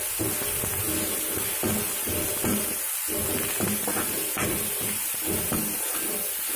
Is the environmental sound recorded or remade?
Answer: recorded